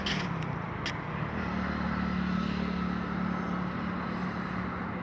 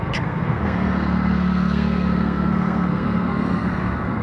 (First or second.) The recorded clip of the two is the first